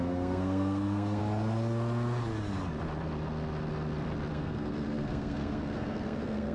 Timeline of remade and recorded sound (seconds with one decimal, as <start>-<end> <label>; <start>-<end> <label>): 0.0-1.2 remade; 1.2-4.3 recorded; 4.3-6.5 remade